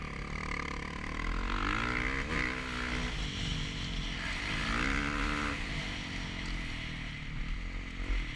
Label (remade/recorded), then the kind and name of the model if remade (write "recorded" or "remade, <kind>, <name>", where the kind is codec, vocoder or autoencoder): recorded